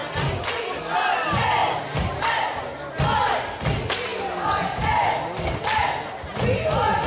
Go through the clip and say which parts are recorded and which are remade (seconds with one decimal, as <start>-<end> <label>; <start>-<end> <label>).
0.0-1.6 recorded; 1.6-2.6 remade; 2.6-7.1 recorded